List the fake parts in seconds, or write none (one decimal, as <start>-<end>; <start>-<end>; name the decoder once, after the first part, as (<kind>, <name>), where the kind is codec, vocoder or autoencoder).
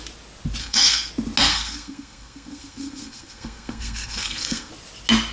0.6-1.1 (codec, SNAC); 1.5-4.7